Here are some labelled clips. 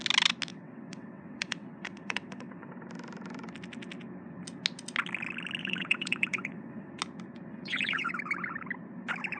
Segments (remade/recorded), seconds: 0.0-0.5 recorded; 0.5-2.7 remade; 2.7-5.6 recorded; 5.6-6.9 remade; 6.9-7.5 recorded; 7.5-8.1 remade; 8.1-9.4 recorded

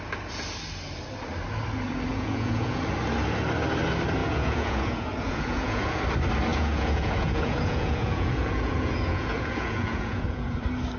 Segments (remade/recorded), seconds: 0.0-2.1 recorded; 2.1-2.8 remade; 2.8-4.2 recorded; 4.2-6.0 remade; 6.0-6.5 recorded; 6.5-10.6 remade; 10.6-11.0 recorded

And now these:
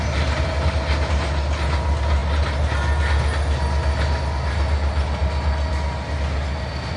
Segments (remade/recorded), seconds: 0.0-7.0 recorded

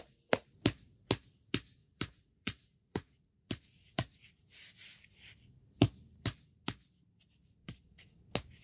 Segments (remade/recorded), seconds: 0.0-1.8 recorded; 1.8-4.6 remade; 4.6-7.6 recorded; 7.6-8.2 remade; 8.2-8.6 recorded

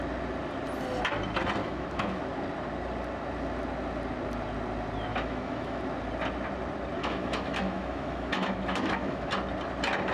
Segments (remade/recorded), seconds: 0.0-1.6 recorded; 1.6-2.2 remade; 2.2-5.1 recorded; 5.1-5.8 remade; 5.8-7.0 recorded; 7.0-9.3 remade; 9.3-10.1 recorded